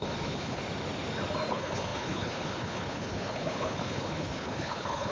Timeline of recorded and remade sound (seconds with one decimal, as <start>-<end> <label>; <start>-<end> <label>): 0.0-0.6 remade; 0.6-1.5 recorded; 1.5-5.1 remade